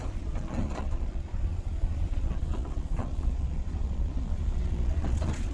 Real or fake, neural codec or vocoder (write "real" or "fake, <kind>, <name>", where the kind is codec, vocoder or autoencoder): fake, vocoder, Vocos